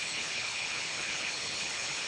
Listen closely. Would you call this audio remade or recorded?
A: remade